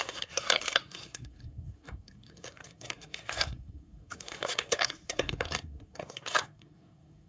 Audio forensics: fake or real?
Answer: fake